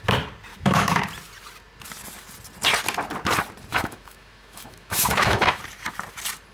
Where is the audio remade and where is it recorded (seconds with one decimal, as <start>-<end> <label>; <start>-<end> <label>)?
0.0-0.5 recorded; 0.5-1.0 remade; 1.0-3.7 recorded; 3.7-5.6 remade; 5.6-6.5 recorded